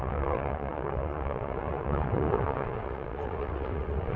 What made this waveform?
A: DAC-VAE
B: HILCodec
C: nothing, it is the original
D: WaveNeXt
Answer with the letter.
D